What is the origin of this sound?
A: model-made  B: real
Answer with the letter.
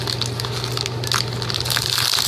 B